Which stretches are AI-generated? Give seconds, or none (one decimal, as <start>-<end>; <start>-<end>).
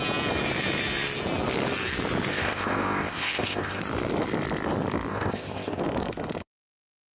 2.3-3.8; 5.1-5.8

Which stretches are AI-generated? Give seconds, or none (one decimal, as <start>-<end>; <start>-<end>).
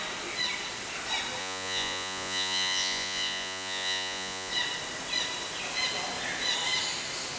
1.4-4.5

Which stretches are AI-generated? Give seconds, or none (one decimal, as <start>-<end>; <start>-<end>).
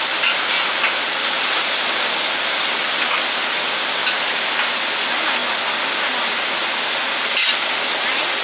none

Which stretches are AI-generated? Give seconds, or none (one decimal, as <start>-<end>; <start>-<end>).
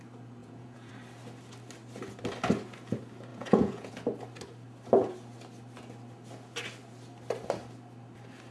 0.4-0.9; 3.3-3.9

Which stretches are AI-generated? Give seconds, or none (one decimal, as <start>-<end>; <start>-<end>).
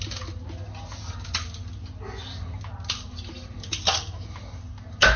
none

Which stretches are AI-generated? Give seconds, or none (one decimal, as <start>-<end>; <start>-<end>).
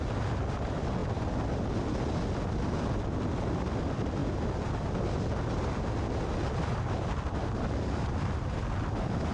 none